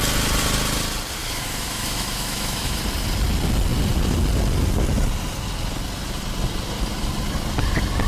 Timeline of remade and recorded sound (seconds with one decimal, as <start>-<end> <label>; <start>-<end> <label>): 0.0-1.2 recorded; 1.2-2.8 remade; 2.8-8.1 recorded